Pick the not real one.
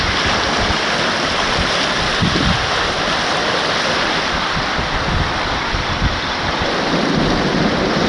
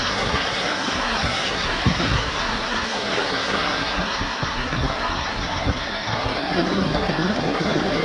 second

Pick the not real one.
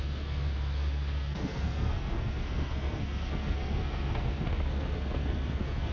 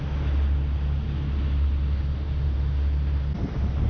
first